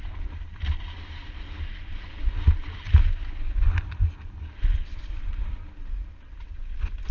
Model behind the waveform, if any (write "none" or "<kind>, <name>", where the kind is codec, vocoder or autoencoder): none